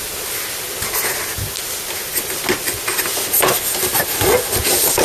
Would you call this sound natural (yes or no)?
yes